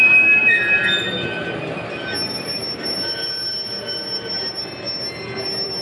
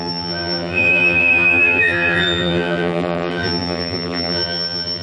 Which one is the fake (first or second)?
second